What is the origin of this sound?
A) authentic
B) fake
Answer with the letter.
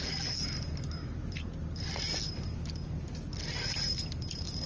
A